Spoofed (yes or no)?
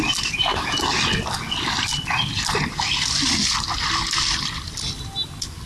no